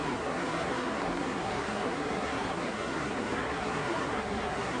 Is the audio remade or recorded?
remade